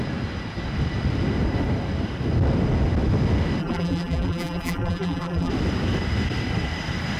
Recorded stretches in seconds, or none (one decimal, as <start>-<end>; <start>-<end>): 0.0-3.6; 5.5-7.2